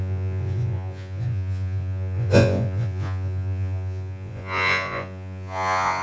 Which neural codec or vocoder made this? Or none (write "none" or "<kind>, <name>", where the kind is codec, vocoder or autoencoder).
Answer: vocoder, Vocos